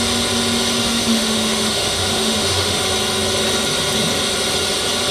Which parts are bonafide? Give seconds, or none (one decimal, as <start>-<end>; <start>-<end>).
0.0-0.8; 2.8-5.1